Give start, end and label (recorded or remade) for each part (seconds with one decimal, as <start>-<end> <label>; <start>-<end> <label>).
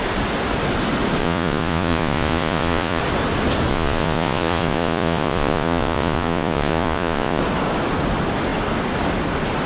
0.0-1.2 recorded; 1.2-3.0 remade; 3.0-3.7 recorded; 3.7-7.4 remade; 7.4-9.7 recorded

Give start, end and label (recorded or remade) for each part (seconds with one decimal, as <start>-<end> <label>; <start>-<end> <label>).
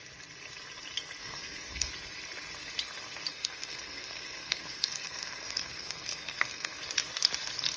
0.0-1.2 recorded; 1.2-1.9 remade; 1.9-3.3 recorded; 3.3-6.8 remade; 6.8-7.8 recorded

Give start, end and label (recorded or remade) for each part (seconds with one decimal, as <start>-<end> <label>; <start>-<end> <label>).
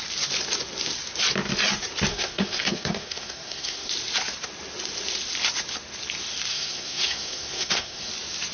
0.0-2.1 recorded; 2.1-3.9 remade; 3.9-6.5 recorded; 6.5-8.1 remade; 8.1-8.5 recorded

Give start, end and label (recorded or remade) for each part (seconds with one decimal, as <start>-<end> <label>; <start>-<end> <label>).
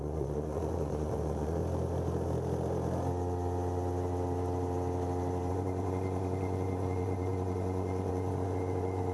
0.0-1.6 remade; 1.6-5.5 recorded; 5.5-9.1 remade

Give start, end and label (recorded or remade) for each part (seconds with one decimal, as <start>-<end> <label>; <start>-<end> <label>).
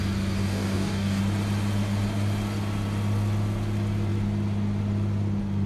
0.0-0.4 recorded; 0.4-1.2 remade; 1.2-5.7 recorded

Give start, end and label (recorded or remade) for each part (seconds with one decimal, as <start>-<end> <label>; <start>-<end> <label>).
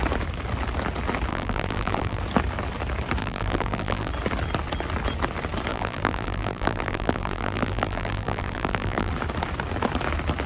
0.0-1.3 recorded; 1.3-2.2 remade; 2.2-3.2 recorded; 3.2-4.1 remade; 4.1-5.7 recorded; 5.7-9.1 remade; 9.1-10.5 recorded